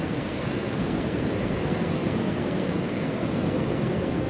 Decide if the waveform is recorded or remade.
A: remade